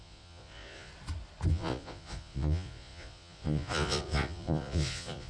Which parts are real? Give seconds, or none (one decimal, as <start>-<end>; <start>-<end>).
0.9-1.5